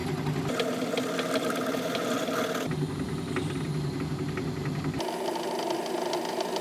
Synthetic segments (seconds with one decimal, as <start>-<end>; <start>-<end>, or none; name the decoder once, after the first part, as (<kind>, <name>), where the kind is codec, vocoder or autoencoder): none